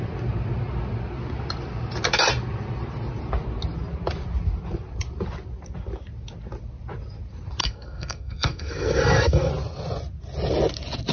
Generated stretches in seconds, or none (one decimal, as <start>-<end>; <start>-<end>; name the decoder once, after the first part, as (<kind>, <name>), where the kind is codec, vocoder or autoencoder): 7.6-9.5 (codec, SNAC)